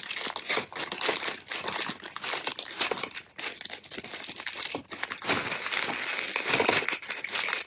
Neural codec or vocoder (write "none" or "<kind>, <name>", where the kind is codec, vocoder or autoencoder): none